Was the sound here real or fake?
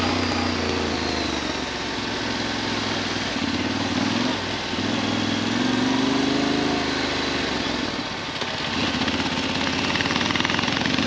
real